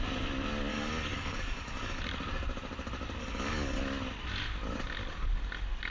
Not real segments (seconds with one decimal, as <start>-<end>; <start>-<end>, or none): 0.7-2.0; 3.2-3.8